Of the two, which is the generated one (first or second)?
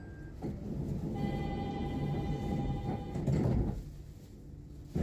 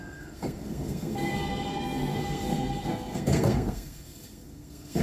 second